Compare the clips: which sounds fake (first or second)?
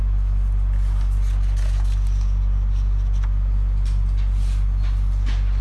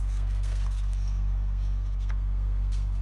second